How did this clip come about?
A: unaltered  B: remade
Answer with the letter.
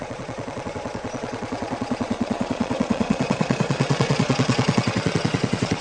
B